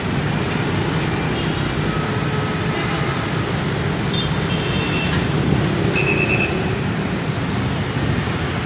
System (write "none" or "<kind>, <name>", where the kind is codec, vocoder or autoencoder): none